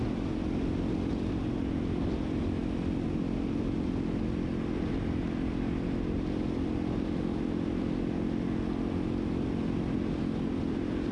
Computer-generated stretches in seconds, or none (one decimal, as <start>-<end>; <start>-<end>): none